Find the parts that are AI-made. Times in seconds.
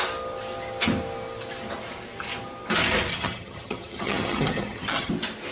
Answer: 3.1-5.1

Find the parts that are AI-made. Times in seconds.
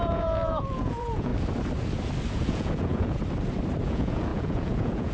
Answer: 0.0-1.3; 2.3-3.2; 3.8-5.1